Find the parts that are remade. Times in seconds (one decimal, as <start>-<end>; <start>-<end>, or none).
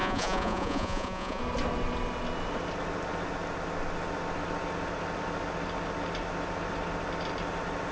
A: 0.0-1.4